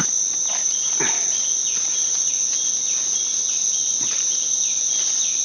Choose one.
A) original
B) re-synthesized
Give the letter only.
A